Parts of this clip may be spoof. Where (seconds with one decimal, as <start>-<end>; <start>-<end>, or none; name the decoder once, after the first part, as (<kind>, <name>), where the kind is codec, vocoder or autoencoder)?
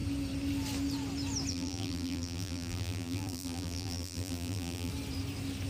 1.5-4.9 (vocoder, BigVGAN v2)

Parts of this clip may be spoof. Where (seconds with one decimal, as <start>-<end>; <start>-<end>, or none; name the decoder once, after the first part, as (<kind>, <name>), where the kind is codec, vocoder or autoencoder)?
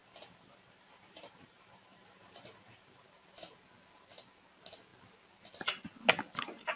0.0-3.5 (vocoder, BigVGAN v2)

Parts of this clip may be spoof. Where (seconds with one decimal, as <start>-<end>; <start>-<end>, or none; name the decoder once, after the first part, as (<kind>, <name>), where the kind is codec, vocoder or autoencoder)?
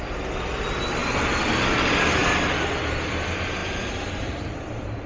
3.6-5.1 (vocoder, BigVGAN v2)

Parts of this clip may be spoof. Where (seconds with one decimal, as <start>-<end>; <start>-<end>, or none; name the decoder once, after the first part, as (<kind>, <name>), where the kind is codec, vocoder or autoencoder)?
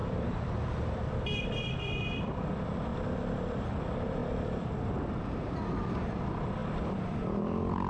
0.0-2.9 (vocoder, BigVGAN v2); 3.8-4.2; 5.9-6.6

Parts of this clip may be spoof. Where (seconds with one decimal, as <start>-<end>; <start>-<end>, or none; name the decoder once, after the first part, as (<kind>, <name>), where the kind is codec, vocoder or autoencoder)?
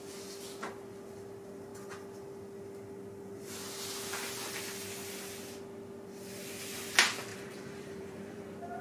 7.3-8.4 (vocoder, BigVGAN v2)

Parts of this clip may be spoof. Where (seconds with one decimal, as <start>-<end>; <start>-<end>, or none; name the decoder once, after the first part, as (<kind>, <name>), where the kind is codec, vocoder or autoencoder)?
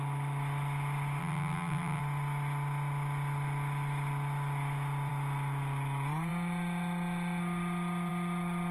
1.2-2.0 (vocoder, BigVGAN v2)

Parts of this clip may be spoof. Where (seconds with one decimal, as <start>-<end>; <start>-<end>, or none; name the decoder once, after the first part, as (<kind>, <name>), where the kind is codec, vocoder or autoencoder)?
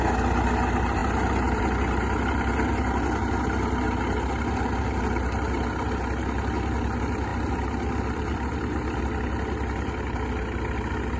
7.3-9.0 (vocoder, BigVGAN v2)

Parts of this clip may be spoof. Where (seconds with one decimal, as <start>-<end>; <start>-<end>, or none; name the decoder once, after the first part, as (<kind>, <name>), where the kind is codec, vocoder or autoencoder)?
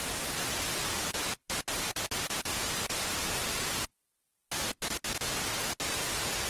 none